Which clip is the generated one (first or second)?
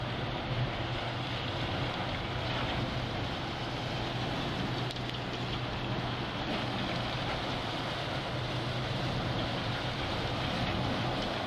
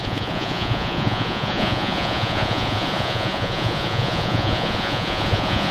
second